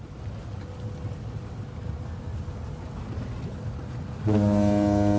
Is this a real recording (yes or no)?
yes